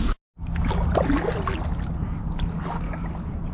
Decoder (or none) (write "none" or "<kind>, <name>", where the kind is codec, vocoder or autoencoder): none